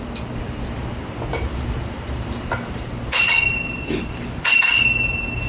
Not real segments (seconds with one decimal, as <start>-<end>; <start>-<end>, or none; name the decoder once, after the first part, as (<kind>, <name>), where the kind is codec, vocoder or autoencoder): 1.3-4.6 (vocoder, BigVGAN v2)